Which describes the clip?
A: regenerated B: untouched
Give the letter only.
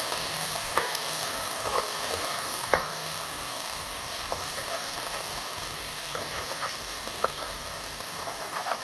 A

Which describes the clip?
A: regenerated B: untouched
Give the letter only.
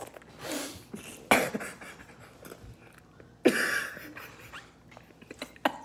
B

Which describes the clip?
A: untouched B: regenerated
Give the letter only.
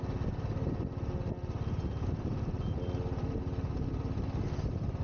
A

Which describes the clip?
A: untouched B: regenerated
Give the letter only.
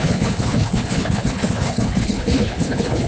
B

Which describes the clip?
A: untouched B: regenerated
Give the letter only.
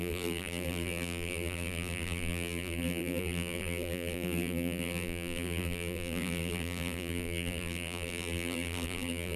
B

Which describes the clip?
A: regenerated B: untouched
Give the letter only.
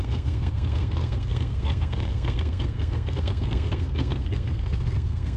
A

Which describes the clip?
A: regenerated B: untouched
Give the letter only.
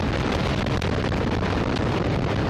B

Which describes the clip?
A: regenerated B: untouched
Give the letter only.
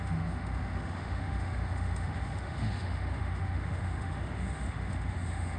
A